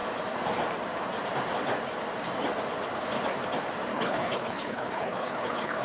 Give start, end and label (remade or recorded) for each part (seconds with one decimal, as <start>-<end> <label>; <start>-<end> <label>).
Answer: 0.0-3.9 recorded; 3.9-5.8 remade